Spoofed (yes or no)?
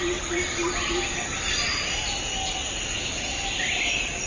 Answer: no